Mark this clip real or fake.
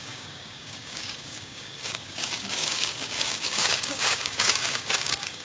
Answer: fake